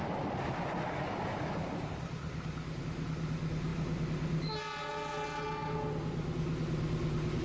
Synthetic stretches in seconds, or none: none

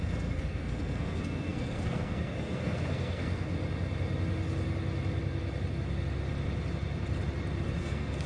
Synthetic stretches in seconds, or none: 0.0-3.5 (codec, SNAC); 7.8-8.3

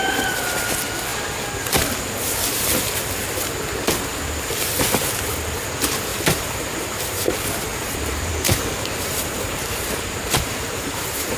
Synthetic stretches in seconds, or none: 6.1-6.8 (vocoder, BigVGAN v2); 7.7-11.4

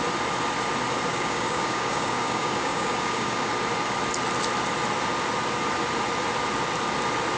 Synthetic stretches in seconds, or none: 1.1-3.5 (codec, DAC)

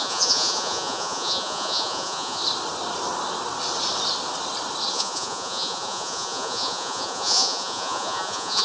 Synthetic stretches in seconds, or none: 0.0-2.4 (vocoder, Vocos); 4.9-8.6

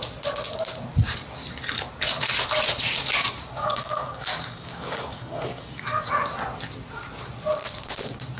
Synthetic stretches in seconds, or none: 3.6-6.1 (codec, DAC)

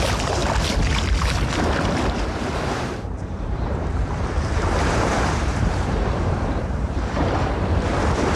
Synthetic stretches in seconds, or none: 0.0-0.4 (vocoder, BigVGAN v2); 2.3-8.4

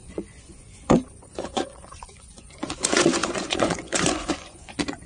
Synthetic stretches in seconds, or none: 0.0-5.1 (vocoder, Vocos)